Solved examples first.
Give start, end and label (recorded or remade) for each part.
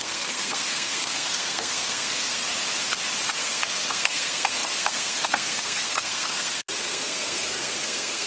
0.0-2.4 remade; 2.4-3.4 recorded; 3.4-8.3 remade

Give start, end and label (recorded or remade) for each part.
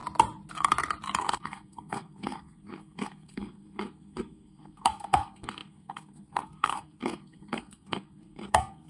0.0-1.2 recorded; 1.2-8.9 remade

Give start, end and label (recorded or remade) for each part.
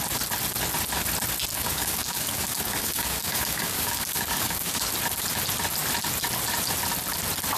0.0-1.5 recorded; 1.5-4.9 remade; 4.9-7.6 recorded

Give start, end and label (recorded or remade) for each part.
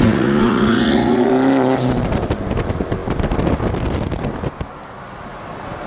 0.0-1.3 remade; 1.3-5.9 recorded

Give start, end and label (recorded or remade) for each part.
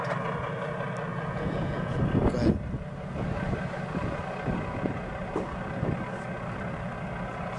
0.0-1.1 recorded; 1.1-2.0 remade; 2.0-7.6 recorded